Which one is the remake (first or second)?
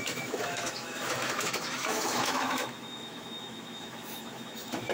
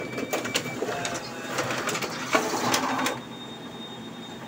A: first